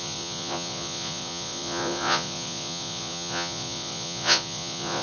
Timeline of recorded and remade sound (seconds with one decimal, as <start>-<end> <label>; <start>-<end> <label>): 0.0-5.0 remade